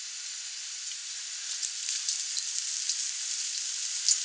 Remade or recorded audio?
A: recorded